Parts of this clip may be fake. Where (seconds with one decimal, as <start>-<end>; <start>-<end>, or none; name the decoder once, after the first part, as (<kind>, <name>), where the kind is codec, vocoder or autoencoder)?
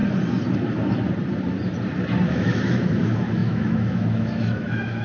2.3-5.0 (autoencoder, DAC-VAE)